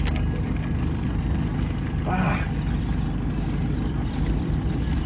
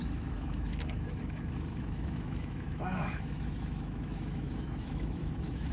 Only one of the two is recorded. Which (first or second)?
first